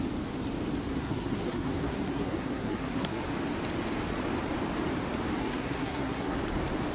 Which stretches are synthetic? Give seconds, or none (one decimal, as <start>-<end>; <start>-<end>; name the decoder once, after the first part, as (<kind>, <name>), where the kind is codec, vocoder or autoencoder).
1.0-3.2 (codec, SNAC); 5.4-6.4